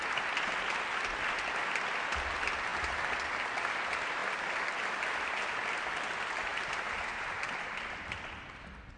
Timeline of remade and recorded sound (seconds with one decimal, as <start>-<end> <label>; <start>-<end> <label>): 0.0-6.5 recorded; 6.5-7.3 remade; 7.3-9.0 recorded